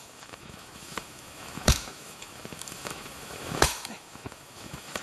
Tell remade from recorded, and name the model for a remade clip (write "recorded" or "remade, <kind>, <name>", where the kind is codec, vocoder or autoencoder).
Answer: remade, autoencoder, DAC-VAE